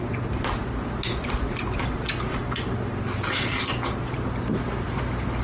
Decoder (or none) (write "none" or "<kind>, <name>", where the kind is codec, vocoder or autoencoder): none